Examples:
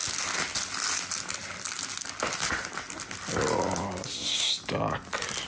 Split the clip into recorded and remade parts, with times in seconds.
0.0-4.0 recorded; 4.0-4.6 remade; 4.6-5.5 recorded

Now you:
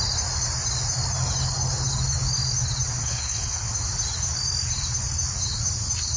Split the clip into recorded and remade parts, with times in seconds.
0.0-3.0 recorded; 3.0-3.7 remade; 3.7-6.2 recorded

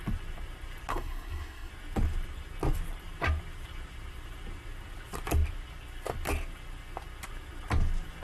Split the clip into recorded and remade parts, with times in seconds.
0.0-0.9 recorded; 0.9-1.7 remade; 1.7-8.2 recorded

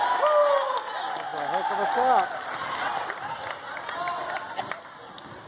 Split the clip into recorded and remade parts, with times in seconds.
0.0-5.5 recorded

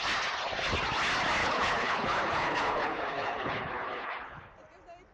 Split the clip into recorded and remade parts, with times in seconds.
0.0-1.4 recorded; 1.4-4.5 remade; 4.5-5.1 recorded

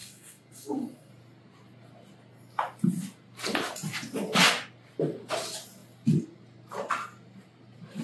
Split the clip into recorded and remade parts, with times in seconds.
0.0-1.1 remade; 1.1-8.0 recorded

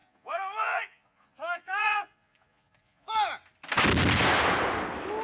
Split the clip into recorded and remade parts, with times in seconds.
0.0-3.1 remade; 3.1-5.2 recorded